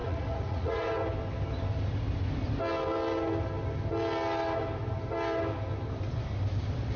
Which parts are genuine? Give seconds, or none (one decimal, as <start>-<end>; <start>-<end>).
0.9-7.0